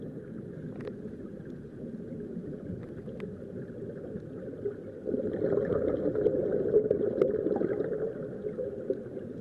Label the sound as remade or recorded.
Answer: recorded